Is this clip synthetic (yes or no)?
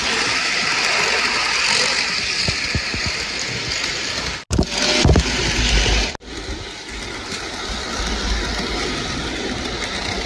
no